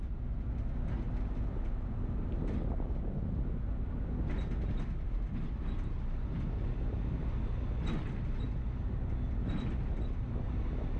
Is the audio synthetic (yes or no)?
no